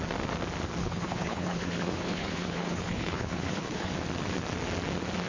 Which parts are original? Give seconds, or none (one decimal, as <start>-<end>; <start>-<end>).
0.0-0.8; 3.9-5.3